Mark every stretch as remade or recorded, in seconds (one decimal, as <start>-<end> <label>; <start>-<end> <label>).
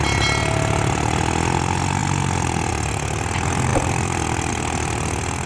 0.0-3.7 recorded; 3.7-4.5 remade; 4.5-5.5 recorded